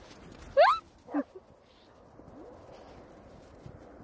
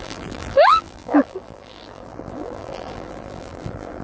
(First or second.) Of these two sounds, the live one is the first